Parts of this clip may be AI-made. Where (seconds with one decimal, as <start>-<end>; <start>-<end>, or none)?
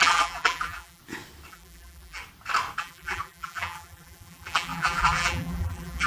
0.0-1.0; 1.5-2.2; 2.8-6.1